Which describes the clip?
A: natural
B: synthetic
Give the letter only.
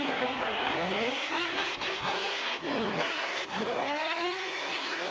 B